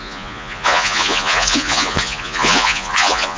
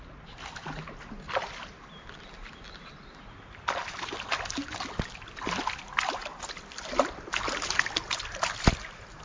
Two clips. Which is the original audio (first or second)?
second